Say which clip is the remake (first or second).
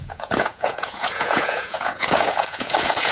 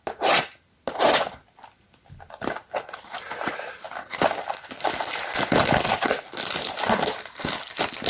first